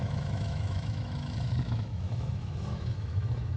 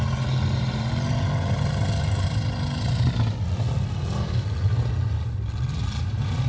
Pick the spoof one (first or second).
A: first